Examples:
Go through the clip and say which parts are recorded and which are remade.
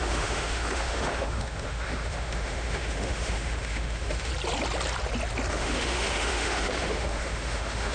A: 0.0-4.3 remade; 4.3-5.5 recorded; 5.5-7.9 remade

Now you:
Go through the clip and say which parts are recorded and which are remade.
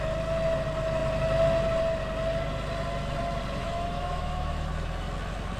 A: 0.0-3.6 recorded; 3.6-4.7 remade; 4.7-5.6 recorded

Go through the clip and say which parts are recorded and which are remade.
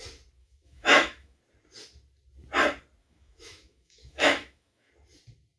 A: 0.0-0.4 recorded; 0.4-1.4 remade; 1.4-3.0 recorded; 3.0-4.9 remade; 4.9-5.6 recorded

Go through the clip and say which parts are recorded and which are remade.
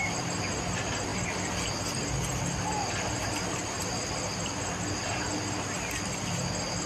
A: 0.0-6.9 recorded